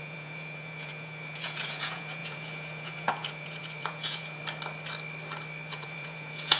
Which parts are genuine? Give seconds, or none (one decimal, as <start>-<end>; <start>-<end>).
4.4-5.7